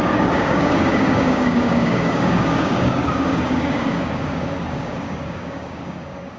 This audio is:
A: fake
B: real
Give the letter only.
A